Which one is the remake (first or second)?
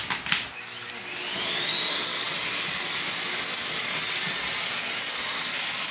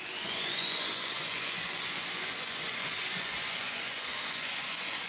second